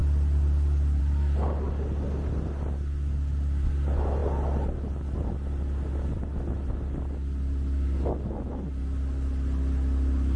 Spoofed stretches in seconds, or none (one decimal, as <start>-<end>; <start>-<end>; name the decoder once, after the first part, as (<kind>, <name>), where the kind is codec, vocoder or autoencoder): none

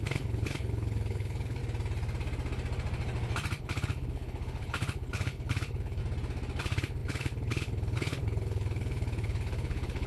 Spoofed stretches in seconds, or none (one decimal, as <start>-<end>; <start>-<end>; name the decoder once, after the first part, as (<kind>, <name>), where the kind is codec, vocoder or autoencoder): 0.0-1.6 (codec, HILCodec); 3.6-6.0; 6.6-10.1

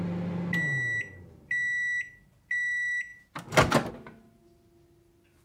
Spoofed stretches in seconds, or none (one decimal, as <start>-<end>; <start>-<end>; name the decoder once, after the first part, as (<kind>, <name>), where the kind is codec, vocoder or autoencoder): none